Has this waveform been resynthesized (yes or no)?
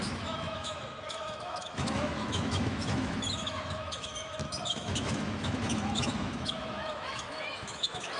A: yes